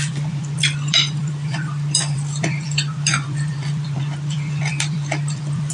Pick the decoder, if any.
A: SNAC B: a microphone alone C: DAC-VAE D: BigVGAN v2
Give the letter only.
D